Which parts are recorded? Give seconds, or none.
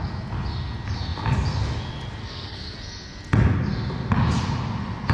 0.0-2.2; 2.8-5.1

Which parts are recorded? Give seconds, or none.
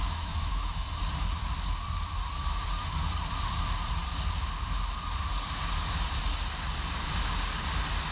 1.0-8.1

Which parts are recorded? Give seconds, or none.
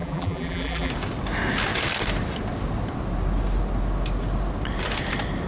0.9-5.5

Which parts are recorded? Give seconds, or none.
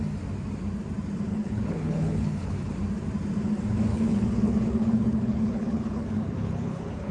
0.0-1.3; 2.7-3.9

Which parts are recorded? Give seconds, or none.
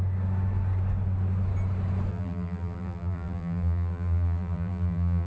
0.0-2.1